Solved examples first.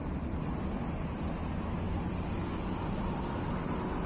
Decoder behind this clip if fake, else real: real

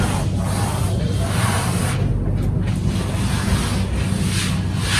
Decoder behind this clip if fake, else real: real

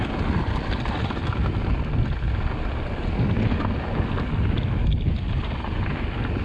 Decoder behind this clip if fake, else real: real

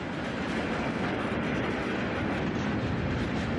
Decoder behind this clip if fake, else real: real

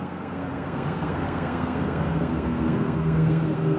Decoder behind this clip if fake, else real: fake, codec, SNAC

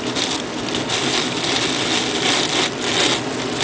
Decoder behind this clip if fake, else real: real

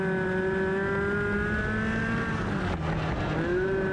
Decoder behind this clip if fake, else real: real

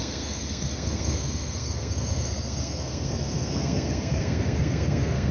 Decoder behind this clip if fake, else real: fake, codec, SNAC